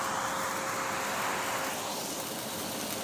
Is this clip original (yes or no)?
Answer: yes